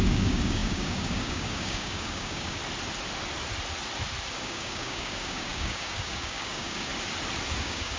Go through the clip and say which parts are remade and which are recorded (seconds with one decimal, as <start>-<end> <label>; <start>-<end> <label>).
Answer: 0.0-2.6 remade; 2.6-4.4 recorded; 4.4-6.9 remade; 6.9-7.6 recorded; 7.6-8.0 remade